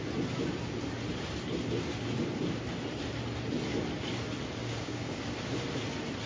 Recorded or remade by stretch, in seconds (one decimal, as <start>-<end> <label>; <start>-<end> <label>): 0.0-4.6 recorded; 4.6-5.2 remade; 5.2-6.3 recorded